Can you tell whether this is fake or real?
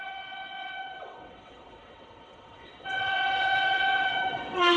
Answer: fake